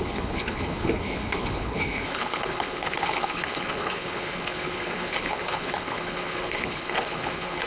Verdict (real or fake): fake